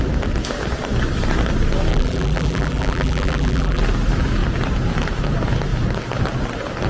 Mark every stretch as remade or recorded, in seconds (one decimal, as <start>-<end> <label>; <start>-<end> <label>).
0.0-1.9 recorded; 1.9-3.8 remade; 3.8-6.9 recorded